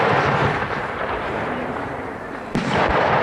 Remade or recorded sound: remade